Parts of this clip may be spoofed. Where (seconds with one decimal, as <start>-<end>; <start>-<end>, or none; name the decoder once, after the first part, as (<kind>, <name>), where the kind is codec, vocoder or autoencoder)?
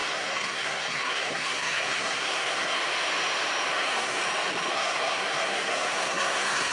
0.0-2.8 (codec, SNAC); 3.7-4.2; 4.7-6.7